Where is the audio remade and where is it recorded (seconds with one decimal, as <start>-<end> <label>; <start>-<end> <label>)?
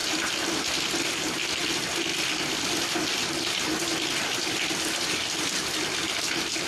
0.0-1.7 remade; 1.7-2.1 recorded; 2.1-4.7 remade; 4.7-6.7 recorded